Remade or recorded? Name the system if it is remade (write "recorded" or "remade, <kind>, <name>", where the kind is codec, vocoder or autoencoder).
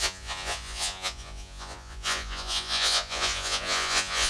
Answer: remade, vocoder, Vocos